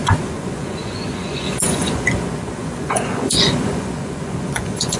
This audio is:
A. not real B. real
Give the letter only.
A